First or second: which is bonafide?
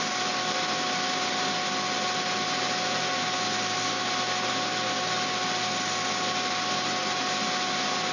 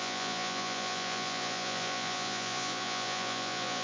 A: first